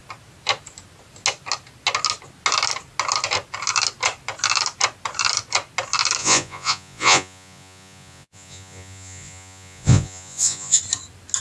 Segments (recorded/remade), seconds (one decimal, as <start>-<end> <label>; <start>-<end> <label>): 0.0-6.2 recorded; 6.2-10.8 remade; 10.8-11.4 recorded